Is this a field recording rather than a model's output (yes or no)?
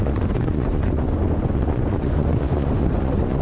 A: no